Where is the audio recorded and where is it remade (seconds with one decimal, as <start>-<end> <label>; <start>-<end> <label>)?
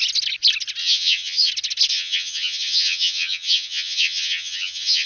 0.0-0.8 recorded; 0.8-1.5 remade; 1.5-1.9 recorded; 1.9-5.1 remade